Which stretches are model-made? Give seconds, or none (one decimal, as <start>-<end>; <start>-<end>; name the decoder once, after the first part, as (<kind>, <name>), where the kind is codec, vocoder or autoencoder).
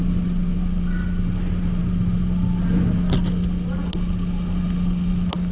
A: none